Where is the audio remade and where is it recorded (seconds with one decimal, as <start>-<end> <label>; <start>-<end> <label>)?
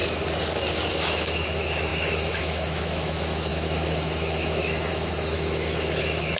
0.0-0.9 recorded; 0.9-6.4 remade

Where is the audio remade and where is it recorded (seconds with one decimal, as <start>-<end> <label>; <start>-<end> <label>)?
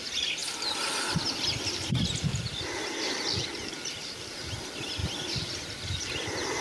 0.0-6.6 recorded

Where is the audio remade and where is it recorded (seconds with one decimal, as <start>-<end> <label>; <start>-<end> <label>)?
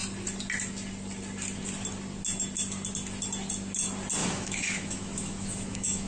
0.0-4.2 recorded; 4.2-6.1 remade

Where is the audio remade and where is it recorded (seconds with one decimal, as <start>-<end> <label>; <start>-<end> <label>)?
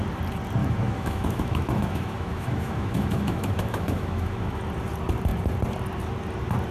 0.0-0.6 recorded; 0.6-4.6 remade; 4.6-6.7 recorded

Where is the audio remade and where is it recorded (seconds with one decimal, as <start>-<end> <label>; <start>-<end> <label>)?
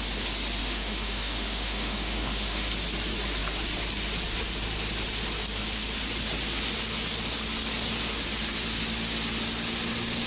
0.0-0.6 recorded; 0.6-2.7 remade; 2.7-10.3 recorded